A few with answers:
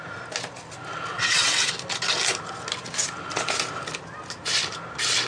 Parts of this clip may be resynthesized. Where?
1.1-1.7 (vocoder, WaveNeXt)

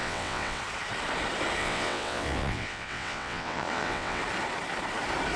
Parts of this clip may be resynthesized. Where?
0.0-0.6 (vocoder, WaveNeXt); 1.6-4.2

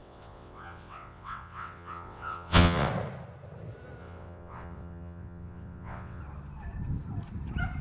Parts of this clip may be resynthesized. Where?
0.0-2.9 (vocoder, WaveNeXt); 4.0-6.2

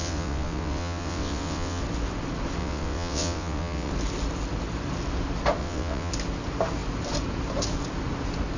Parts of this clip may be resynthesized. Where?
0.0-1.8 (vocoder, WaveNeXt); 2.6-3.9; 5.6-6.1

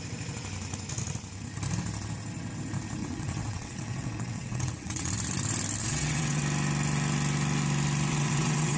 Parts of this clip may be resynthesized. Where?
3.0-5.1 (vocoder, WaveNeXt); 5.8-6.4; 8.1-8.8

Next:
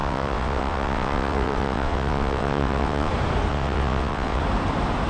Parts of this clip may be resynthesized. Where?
0.0-3.1 (vocoder, WaveNeXt); 3.5-4.4

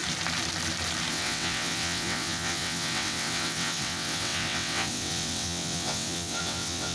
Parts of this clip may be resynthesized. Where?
1.1-6.9 (vocoder, WaveNeXt)

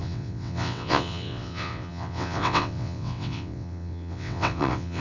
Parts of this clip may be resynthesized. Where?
0.0-5.0 (vocoder, WaveNeXt)